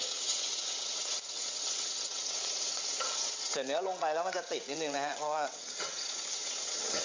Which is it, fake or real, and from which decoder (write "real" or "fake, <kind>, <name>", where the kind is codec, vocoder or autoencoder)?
fake, vocoder, WaveNeXt